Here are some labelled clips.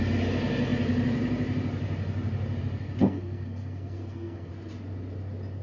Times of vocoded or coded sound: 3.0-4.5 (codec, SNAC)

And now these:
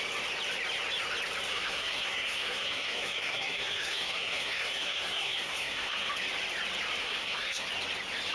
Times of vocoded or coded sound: 1.5-6.1 (codec, SNAC); 7.0-7.7

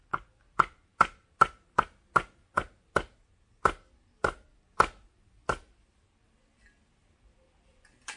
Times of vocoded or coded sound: none

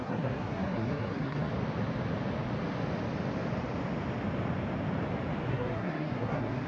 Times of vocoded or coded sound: 0.0-1.5 (codec, SNAC); 5.5-6.7